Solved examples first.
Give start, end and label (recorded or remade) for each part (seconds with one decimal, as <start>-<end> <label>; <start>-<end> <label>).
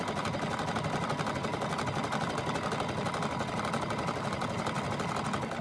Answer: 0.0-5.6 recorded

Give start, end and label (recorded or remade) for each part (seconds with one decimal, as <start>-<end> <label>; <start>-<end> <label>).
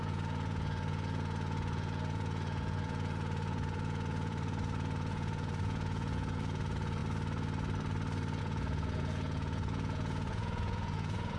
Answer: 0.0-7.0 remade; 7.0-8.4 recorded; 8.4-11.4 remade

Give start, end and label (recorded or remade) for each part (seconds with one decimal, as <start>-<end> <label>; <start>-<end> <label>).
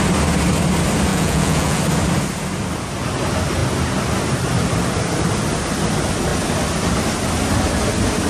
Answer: 0.0-1.1 recorded; 1.1-1.8 remade; 1.8-8.3 recorded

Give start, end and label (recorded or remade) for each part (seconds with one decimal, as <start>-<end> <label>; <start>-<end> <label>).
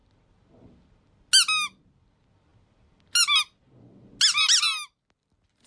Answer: 0.0-5.7 recorded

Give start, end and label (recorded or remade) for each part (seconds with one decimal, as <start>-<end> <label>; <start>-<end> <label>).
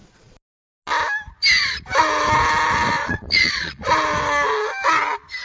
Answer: 0.0-3.0 recorded; 3.0-3.9 remade; 3.9-5.4 recorded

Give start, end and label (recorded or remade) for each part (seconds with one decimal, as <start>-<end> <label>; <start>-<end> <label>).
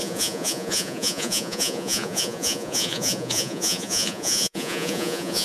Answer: 0.0-5.4 remade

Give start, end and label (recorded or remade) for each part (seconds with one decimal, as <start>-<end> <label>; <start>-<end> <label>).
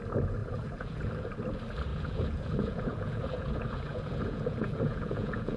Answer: 0.0-0.4 recorded; 0.4-1.3 remade; 1.3-1.9 recorded; 1.9-5.6 remade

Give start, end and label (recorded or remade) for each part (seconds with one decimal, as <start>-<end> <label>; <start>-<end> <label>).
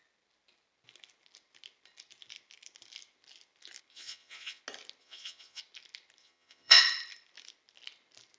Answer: 0.0-3.9 recorded; 3.9-4.6 remade; 4.6-5.0 recorded; 5.0-5.6 remade; 5.6-6.2 recorded; 6.2-6.8 remade; 6.8-8.4 recorded